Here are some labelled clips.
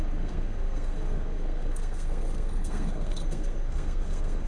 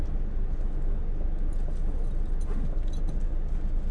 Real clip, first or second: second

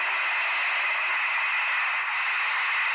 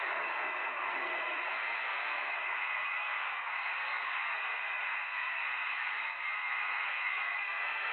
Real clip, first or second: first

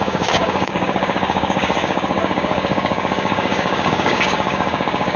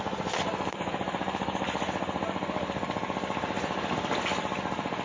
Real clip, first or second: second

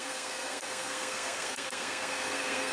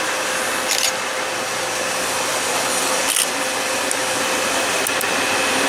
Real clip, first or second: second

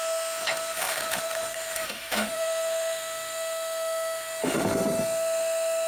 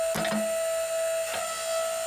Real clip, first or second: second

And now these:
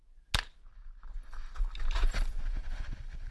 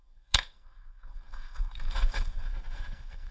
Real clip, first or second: first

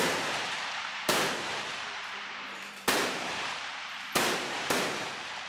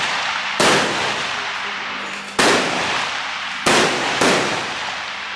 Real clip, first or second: second